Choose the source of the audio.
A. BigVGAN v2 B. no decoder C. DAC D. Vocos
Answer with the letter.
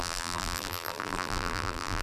A